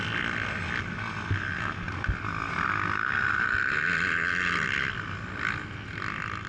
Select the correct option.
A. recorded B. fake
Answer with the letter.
A